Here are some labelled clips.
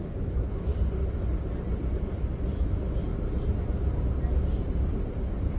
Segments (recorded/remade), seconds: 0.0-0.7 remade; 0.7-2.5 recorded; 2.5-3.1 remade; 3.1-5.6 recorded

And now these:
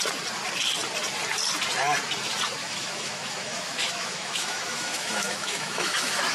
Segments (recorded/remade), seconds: 0.0-2.6 recorded; 2.6-6.3 remade

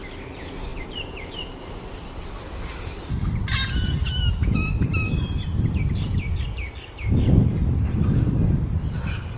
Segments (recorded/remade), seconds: 0.0-4.0 recorded; 4.0-4.9 remade; 4.9-9.4 recorded

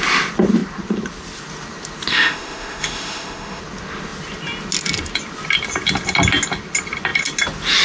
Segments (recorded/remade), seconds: 0.0-2.1 recorded; 2.1-3.6 remade; 3.6-7.8 recorded

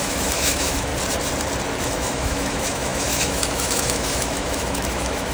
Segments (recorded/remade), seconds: 0.0-0.9 remade; 0.9-1.8 recorded; 1.8-5.3 remade

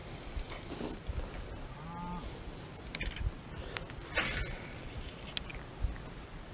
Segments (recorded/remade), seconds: 0.0-6.5 recorded